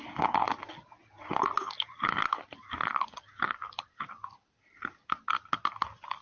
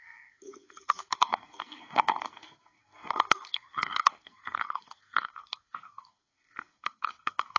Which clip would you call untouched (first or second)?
first